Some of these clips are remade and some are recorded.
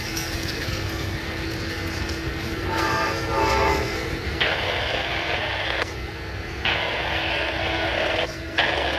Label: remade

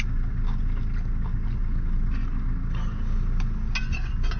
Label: recorded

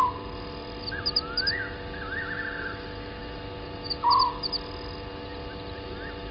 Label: recorded